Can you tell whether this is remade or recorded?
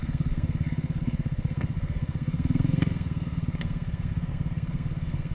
remade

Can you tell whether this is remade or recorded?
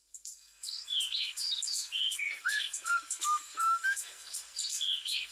remade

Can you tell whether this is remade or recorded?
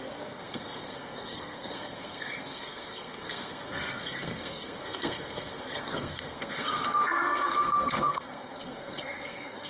remade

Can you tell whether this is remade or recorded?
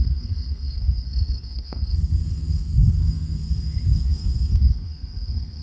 remade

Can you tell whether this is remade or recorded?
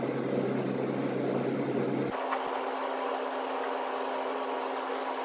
recorded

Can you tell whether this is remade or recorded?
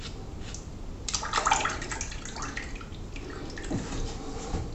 recorded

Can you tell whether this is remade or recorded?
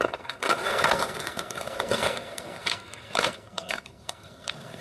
remade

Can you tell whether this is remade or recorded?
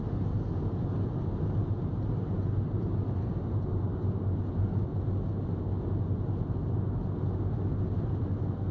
recorded